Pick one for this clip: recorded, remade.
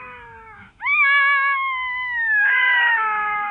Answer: remade